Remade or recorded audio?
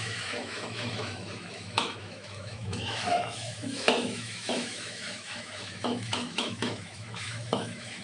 remade